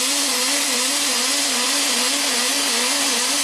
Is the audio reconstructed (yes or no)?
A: no